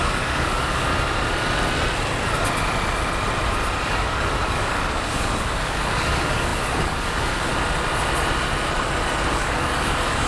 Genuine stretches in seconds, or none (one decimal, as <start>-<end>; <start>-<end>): 0.9-3.9; 7.5-9.3